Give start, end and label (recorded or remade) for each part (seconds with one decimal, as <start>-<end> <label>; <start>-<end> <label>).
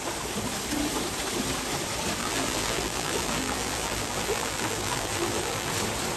0.0-2.2 recorded; 2.2-5.7 remade; 5.7-6.2 recorded